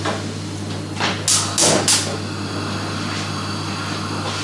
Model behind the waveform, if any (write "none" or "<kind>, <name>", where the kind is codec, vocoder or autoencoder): none